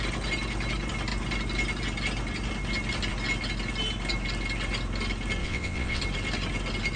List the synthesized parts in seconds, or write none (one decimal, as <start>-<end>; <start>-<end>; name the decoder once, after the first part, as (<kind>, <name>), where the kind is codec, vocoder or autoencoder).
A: 5.4-6.0 (vocoder, WaveNeXt)